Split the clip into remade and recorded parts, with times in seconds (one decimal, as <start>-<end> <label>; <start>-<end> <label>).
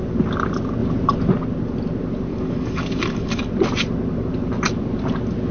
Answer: 0.0-2.3 recorded; 2.3-3.5 remade; 3.5-5.5 recorded